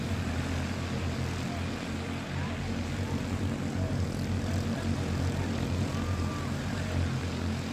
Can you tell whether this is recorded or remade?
recorded